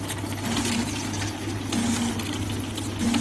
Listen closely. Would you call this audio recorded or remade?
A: recorded